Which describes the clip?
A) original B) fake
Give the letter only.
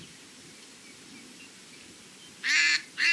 B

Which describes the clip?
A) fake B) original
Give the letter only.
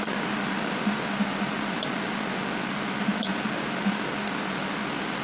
B